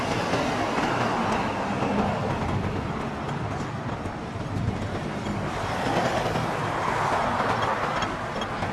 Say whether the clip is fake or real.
real